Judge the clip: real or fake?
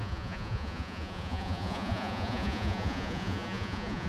fake